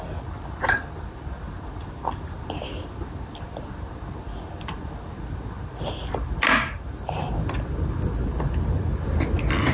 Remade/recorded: recorded